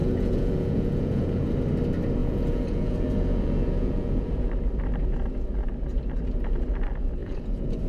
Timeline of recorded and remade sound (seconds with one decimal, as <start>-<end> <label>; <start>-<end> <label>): 0.0-1.5 remade; 1.5-2.2 recorded; 2.2-4.5 remade; 4.5-7.2 recorded; 7.2-7.9 remade